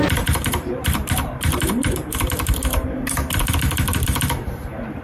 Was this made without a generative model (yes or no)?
no